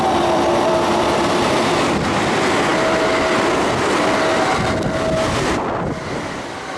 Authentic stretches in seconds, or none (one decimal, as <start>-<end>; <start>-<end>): 2.7-6.8